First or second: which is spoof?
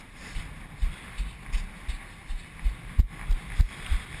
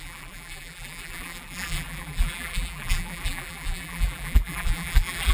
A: second